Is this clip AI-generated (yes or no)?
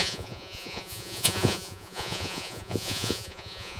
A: yes